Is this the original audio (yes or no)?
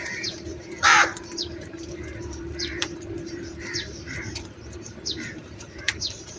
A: no